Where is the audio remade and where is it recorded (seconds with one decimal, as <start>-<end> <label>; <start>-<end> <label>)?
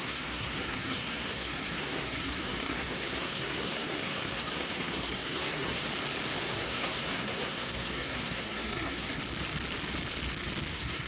0.0-5.8 remade; 5.8-6.4 recorded; 6.4-9.2 remade; 9.2-10.7 recorded; 10.7-11.1 remade